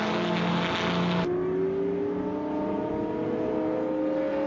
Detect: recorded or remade recorded